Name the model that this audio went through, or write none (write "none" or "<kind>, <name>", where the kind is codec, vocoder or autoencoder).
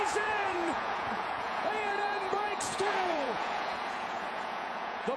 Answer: vocoder, Vocos